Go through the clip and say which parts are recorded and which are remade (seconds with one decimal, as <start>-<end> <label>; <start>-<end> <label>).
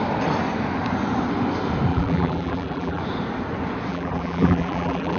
0.0-1.9 recorded; 1.9-3.0 remade; 3.0-3.9 recorded; 3.9-5.2 remade